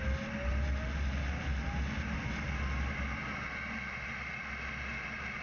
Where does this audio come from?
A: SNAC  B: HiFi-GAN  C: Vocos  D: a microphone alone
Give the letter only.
D